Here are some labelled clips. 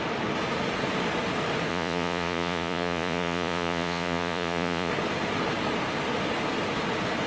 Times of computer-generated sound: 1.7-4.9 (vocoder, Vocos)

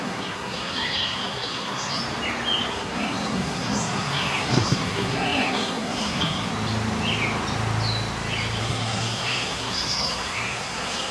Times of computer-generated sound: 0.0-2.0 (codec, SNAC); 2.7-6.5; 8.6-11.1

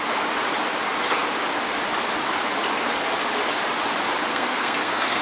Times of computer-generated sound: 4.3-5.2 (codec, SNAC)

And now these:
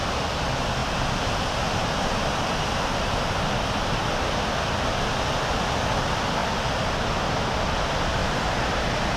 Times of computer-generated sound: none

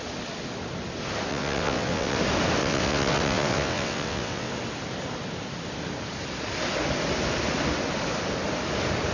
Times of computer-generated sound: 1.3-2.2 (vocoder, WaveNeXt); 2.6-4.5

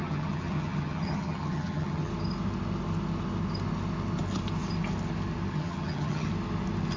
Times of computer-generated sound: 0.0-2.1 (vocoder, HiFi-GAN); 5.5-6.3